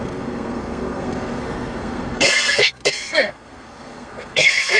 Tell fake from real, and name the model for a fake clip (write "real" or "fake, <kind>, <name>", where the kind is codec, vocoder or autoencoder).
fake, codec, SNAC